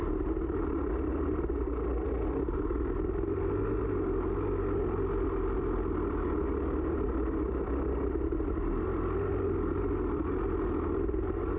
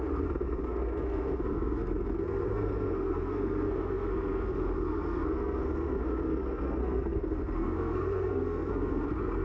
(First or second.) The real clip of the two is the first